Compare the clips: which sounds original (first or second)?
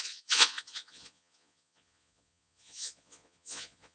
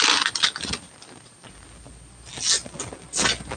second